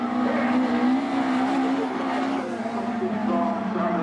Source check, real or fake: real